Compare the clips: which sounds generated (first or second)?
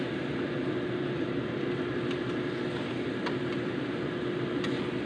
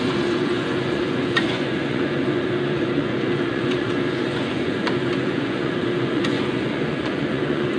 second